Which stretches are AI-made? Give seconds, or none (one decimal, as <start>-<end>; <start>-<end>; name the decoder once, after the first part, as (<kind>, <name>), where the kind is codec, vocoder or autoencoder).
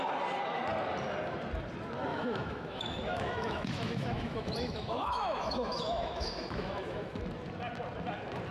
2.1-7.2 (autoencoder, DAC-VAE)